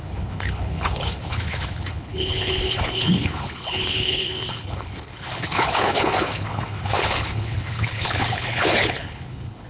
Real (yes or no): no